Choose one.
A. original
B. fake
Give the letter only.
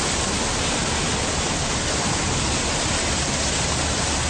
A